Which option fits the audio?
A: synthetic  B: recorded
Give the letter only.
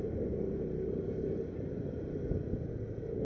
B